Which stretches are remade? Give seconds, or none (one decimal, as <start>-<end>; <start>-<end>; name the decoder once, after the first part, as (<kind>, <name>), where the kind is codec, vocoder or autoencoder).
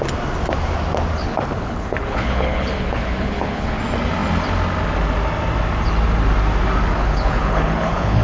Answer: 1.2-3.8 (codec, HILCodec); 7.0-8.2